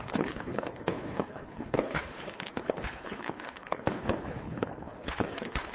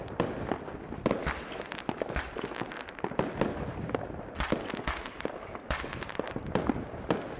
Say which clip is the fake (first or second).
first